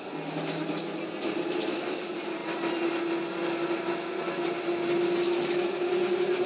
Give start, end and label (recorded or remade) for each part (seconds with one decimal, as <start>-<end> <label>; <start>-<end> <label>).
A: 0.0-6.5 recorded